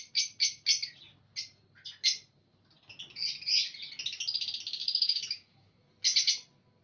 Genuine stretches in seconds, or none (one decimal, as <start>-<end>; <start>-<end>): 0.0-4.8; 5.9-6.8